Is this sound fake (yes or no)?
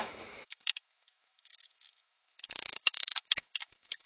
yes